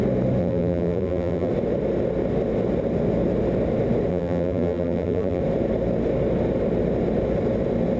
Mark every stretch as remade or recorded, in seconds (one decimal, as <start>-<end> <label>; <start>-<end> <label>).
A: 0.0-0.4 recorded; 0.4-1.5 remade; 1.5-4.1 recorded; 4.1-5.4 remade; 5.4-8.0 recorded